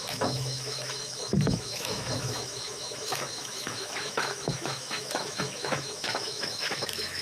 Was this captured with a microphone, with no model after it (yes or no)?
no